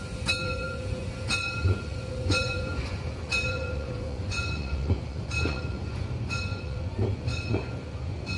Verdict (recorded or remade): remade